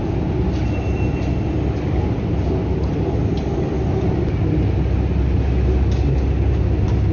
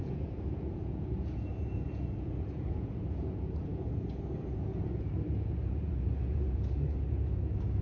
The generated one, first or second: second